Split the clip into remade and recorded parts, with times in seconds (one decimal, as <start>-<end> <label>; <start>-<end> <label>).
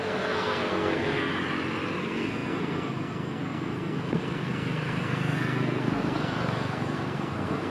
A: 0.0-1.3 remade; 1.3-2.0 recorded; 2.0-7.7 remade